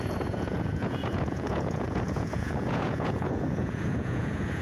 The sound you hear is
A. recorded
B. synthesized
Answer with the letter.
B